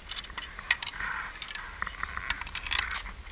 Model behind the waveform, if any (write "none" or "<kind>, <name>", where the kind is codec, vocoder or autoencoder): none